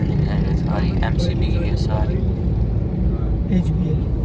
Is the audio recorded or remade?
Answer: remade